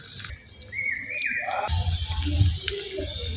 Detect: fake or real real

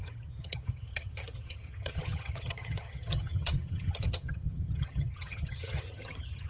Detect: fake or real fake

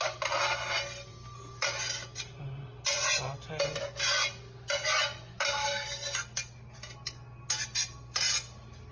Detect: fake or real real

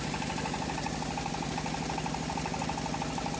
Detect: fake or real real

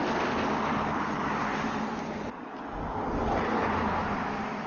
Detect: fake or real real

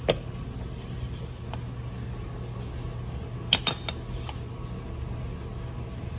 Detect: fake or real real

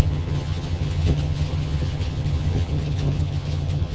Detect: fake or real fake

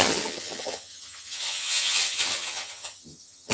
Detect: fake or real fake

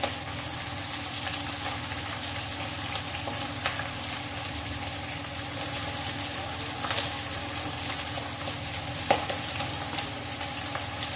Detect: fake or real real